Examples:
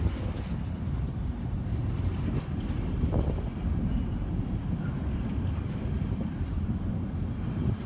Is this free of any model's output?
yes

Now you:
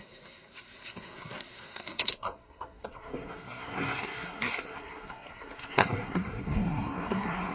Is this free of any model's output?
no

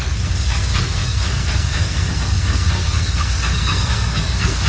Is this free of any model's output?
no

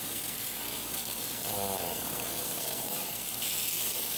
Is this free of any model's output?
no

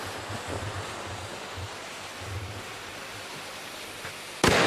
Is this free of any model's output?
yes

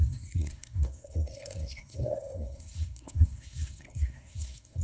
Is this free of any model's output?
no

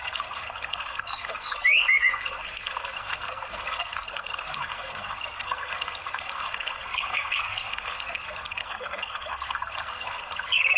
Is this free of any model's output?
no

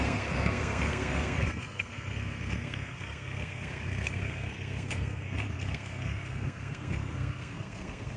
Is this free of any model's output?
no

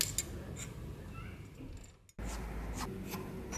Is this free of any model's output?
yes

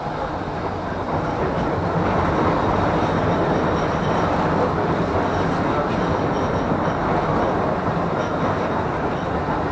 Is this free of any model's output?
yes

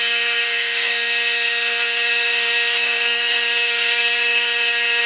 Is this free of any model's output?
no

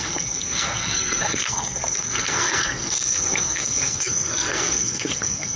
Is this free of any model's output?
no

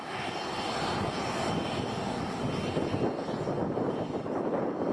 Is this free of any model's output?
yes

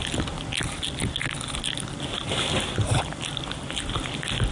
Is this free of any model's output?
yes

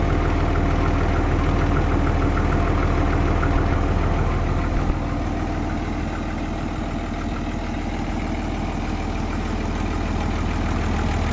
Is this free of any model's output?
yes